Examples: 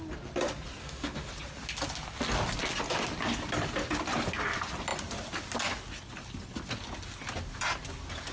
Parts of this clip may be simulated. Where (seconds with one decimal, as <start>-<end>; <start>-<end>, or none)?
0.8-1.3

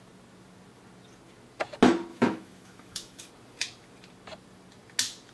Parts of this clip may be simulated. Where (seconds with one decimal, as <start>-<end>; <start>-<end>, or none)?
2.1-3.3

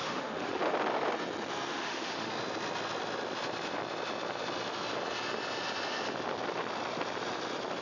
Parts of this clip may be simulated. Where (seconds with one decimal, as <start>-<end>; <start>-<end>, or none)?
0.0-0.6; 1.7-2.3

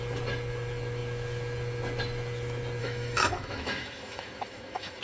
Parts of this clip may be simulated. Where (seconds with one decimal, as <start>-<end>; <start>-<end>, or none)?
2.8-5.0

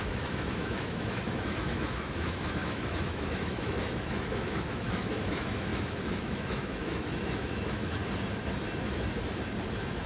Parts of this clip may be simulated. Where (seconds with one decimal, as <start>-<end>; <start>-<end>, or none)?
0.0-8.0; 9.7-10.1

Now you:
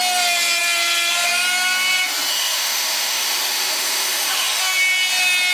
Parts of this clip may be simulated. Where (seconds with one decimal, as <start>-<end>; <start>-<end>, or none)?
2.3-4.6

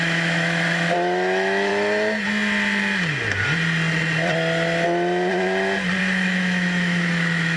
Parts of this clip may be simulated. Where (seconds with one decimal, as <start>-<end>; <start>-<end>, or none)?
0.0-1.7; 6.0-7.6

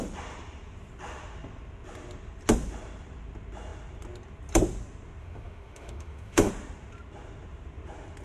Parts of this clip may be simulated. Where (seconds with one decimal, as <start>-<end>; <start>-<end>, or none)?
5.2-6.5